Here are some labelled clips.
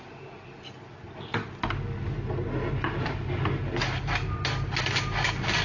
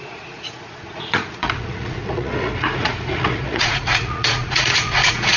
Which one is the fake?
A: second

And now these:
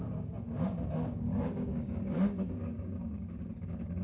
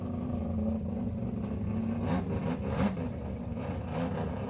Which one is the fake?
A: first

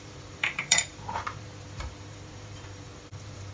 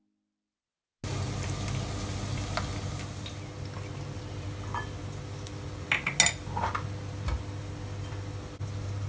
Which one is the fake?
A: first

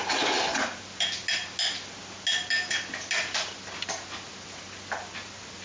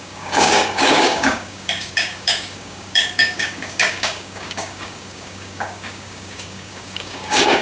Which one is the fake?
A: second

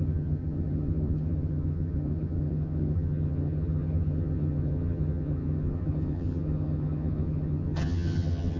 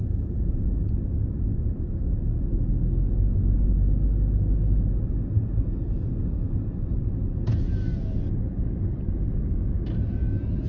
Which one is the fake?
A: first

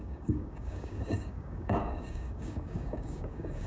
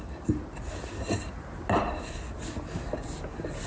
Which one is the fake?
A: first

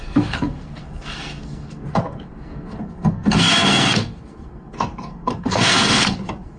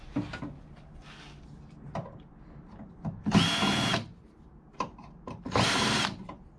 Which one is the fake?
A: first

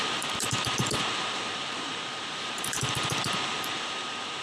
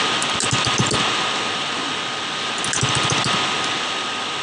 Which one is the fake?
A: first